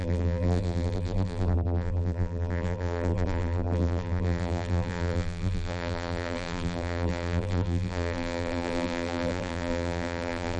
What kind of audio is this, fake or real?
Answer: fake